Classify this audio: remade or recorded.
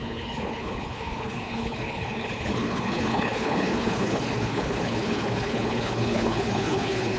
remade